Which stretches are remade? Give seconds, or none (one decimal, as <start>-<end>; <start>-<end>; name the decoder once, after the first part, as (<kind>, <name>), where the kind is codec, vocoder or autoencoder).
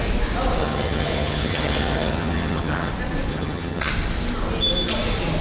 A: 0.6-2.9 (vocoder, HiFi-GAN); 3.3-3.9